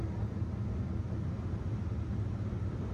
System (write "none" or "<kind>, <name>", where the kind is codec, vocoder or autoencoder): none